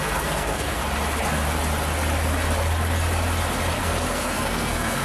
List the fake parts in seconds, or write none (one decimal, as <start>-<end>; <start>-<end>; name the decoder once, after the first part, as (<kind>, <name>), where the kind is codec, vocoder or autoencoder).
0.0-0.8 (codec, SNAC); 3.8-5.0